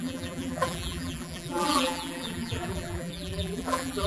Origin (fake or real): fake